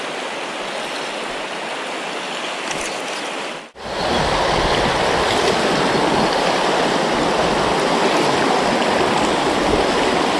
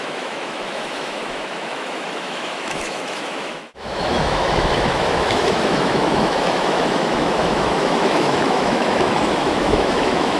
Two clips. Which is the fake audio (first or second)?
second